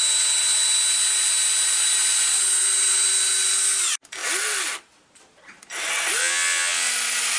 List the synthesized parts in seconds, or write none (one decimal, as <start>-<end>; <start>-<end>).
6.2-6.9